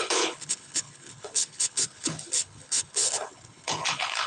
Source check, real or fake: fake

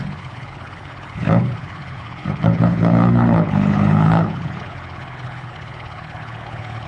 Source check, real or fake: fake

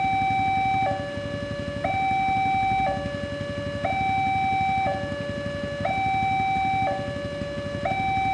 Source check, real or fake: real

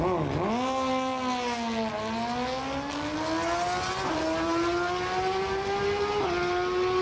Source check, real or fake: real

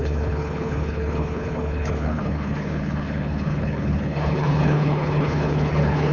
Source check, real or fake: fake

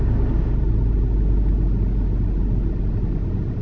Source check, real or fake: real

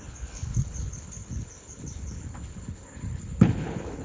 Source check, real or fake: fake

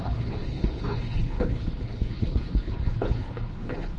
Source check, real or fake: fake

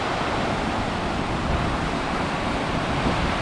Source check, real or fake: real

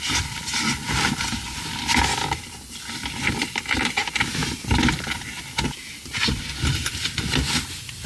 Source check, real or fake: real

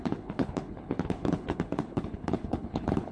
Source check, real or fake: fake